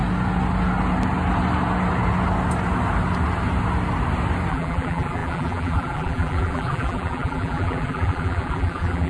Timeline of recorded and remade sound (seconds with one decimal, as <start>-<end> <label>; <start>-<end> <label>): 0.0-4.5 recorded; 4.5-9.1 remade